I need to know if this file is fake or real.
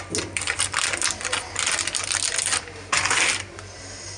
real